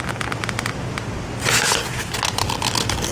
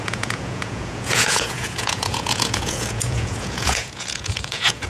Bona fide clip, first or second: first